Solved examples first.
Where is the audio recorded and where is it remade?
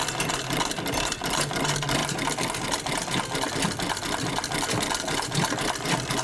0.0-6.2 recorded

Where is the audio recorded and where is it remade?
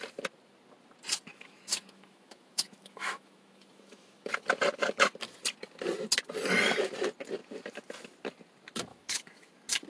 0.0-1.3 recorded; 1.3-4.3 remade; 4.3-8.9 recorded; 8.9-9.5 remade; 9.5-9.9 recorded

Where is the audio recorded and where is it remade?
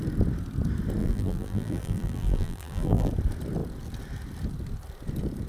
0.0-1.0 recorded; 1.0-3.1 remade; 3.1-5.5 recorded